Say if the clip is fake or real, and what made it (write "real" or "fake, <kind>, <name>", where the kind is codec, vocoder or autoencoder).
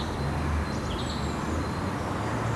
real